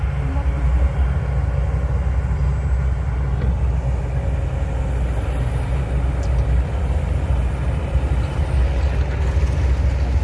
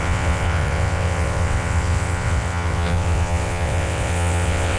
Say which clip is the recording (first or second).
first